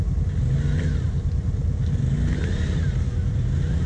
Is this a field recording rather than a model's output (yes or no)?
yes